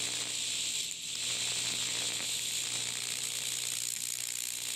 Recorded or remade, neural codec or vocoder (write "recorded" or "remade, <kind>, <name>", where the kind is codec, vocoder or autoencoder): recorded